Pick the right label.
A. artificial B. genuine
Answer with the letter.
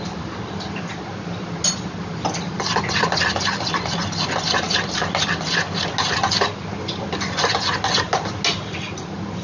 B